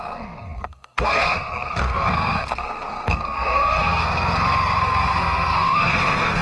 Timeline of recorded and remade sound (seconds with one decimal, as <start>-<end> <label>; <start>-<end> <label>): 0.0-6.4 remade

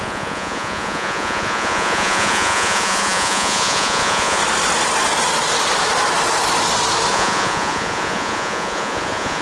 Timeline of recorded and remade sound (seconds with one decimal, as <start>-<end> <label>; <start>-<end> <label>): 0.0-4.4 remade; 4.4-7.1 recorded; 7.1-9.4 remade

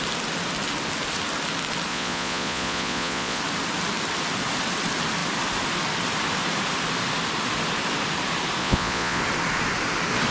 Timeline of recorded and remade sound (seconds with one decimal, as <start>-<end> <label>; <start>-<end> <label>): 0.0-1.9 recorded; 1.9-3.4 remade; 3.4-8.6 recorded; 8.6-9.2 remade; 9.2-10.3 recorded

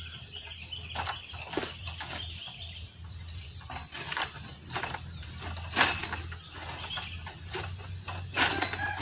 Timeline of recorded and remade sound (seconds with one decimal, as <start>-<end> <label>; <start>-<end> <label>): 0.0-9.0 recorded

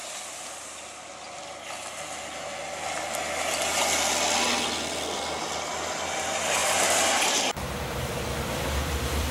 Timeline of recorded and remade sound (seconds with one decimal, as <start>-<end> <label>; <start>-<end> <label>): 0.0-6.6 recorded; 6.6-9.3 remade